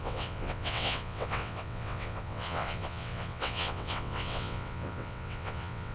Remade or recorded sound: remade